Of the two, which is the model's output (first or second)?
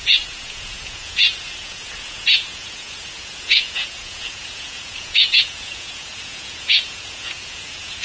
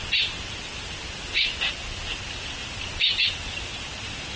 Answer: first